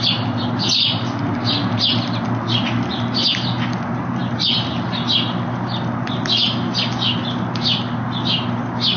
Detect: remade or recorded recorded